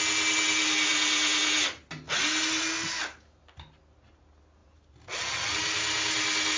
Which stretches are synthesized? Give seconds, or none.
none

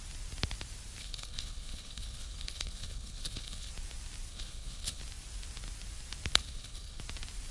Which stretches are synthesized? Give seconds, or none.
1.0-3.7 (codec, HILCodec); 4.3-5.0; 6.4-7.0

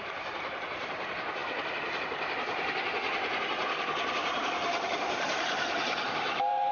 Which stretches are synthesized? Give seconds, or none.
0.0-6.7 (vocoder, BigVGAN v2)

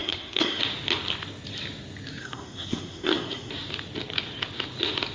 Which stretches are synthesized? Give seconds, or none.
0.0-0.6 (codec, SNAC); 2.2-3.5